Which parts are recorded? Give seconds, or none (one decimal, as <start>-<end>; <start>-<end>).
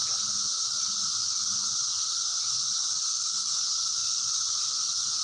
0.0-4.0; 4.7-5.2